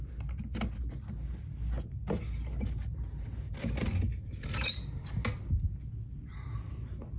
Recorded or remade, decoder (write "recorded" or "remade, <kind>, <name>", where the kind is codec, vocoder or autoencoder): recorded